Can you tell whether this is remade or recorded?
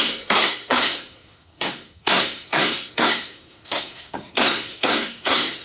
remade